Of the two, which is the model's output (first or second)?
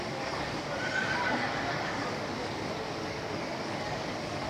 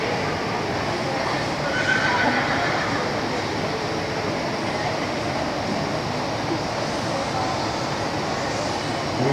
first